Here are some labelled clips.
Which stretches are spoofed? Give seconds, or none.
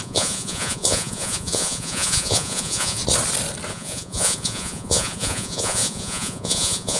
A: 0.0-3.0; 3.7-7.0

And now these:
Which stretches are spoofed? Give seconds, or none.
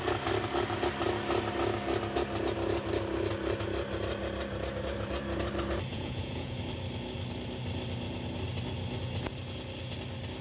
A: 5.9-6.6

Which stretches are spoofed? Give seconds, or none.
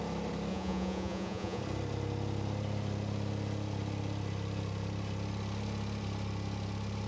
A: 0.5-1.6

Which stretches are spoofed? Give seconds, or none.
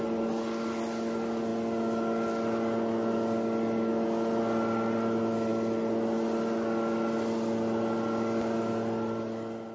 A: none